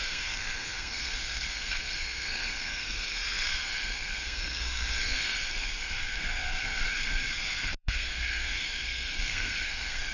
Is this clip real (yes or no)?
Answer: no